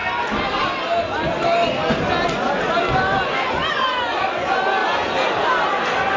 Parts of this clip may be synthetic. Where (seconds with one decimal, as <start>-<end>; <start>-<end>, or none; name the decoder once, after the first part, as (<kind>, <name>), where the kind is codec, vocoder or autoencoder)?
none